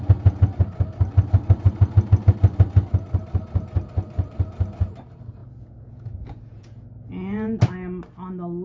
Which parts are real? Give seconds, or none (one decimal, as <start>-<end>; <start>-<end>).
0.0-5.4; 7.6-8.6